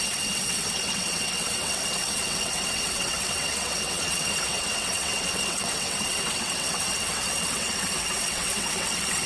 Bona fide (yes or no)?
no